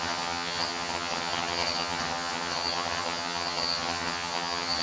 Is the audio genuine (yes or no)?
no